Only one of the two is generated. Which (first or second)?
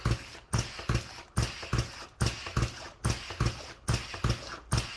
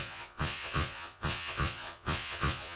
second